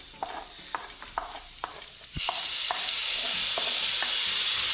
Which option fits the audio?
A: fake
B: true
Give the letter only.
B